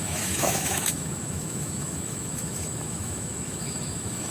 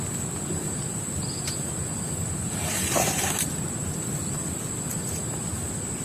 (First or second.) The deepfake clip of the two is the first